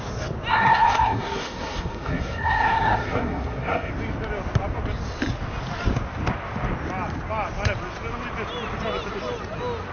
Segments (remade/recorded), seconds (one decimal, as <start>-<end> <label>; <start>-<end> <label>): 0.0-0.5 recorded; 0.5-3.9 remade; 3.9-9.9 recorded